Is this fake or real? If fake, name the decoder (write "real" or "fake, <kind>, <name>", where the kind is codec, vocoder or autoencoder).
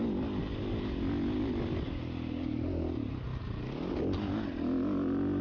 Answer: real